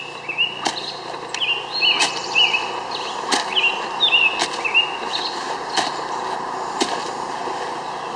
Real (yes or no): yes